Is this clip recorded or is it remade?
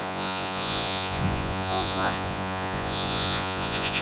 remade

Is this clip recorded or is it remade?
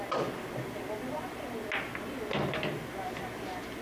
recorded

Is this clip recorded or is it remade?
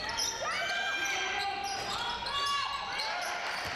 recorded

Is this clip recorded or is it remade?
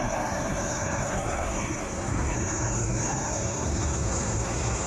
remade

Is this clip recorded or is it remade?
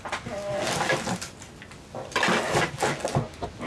recorded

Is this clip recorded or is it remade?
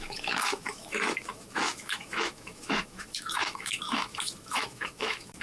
remade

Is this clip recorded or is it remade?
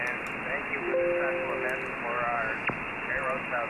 recorded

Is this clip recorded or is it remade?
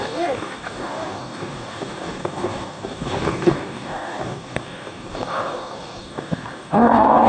remade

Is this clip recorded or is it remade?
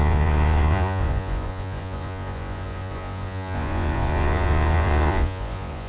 remade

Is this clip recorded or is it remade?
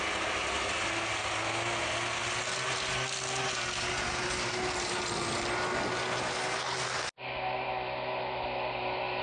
recorded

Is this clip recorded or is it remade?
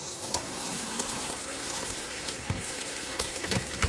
remade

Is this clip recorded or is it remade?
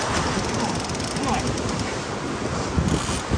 recorded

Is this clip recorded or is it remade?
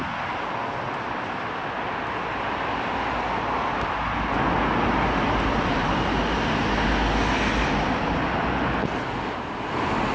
recorded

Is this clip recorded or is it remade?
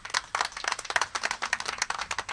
recorded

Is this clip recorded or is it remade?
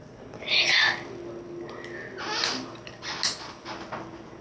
recorded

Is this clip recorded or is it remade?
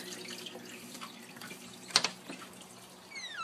recorded